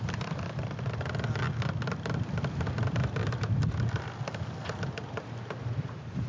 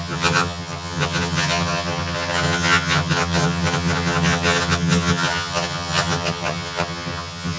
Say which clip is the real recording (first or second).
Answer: first